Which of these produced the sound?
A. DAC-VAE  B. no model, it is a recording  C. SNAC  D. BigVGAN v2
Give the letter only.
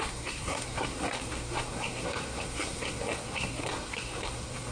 C